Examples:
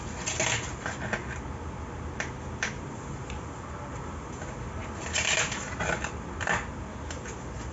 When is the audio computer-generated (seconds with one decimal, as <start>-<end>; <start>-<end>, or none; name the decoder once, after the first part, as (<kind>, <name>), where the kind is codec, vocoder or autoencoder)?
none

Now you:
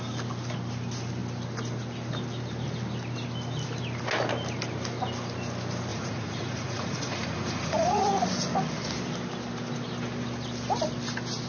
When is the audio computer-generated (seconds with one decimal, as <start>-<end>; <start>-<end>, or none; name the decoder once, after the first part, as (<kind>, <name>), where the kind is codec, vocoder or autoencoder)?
5.9-8.0 (vocoder, Vocos)

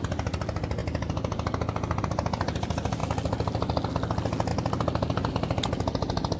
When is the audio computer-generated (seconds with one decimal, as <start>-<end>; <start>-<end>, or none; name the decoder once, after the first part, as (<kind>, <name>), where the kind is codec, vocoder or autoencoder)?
none